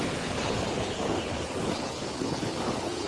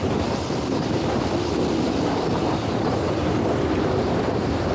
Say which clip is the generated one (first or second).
first